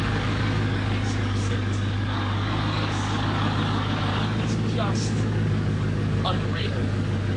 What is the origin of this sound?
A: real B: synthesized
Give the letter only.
B